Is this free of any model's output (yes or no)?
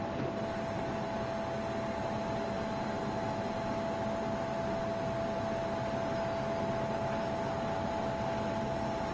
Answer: yes